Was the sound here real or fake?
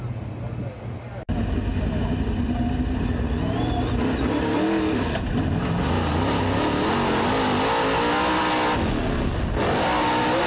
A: real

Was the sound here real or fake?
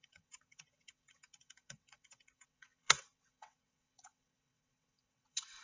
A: fake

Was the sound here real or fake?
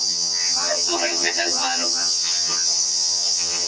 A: fake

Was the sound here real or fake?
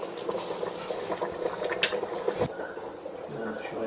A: real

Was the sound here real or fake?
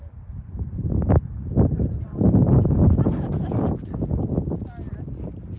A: real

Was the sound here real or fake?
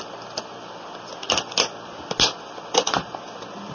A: real